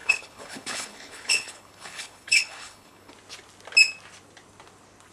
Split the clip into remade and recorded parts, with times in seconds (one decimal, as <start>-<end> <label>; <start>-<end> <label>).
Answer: 0.0-3.1 remade; 3.1-5.1 recorded